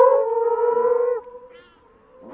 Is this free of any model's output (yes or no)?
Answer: yes